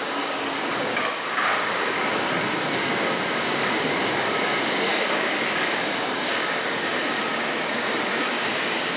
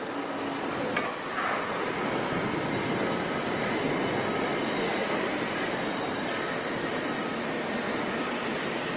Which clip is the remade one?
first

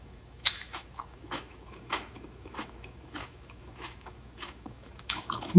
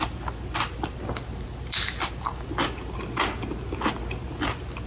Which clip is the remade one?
first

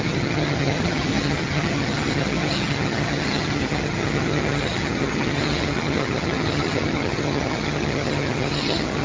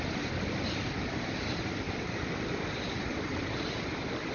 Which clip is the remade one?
first